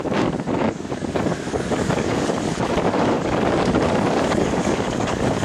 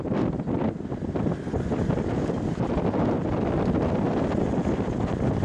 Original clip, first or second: second